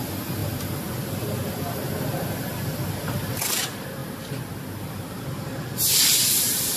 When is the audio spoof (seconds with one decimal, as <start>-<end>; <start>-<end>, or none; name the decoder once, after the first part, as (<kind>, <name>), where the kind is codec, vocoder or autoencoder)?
none